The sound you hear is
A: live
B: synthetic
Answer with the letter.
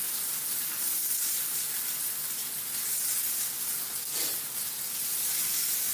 A